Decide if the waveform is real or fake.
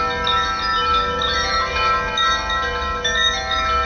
real